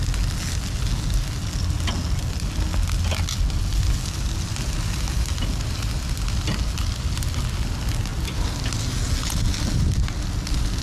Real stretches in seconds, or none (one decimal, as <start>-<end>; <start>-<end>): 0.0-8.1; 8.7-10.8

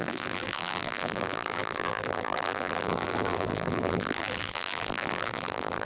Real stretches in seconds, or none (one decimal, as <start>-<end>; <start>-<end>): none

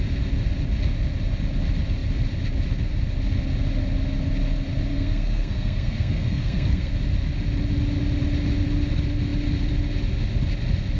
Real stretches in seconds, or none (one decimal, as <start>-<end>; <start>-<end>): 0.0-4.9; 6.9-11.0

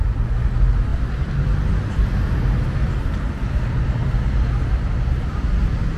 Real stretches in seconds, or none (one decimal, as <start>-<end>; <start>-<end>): 0.0-0.9; 1.6-6.0